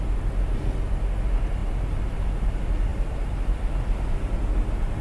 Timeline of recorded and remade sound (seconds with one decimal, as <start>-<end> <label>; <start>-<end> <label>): 0.0-2.9 recorded; 2.9-5.0 remade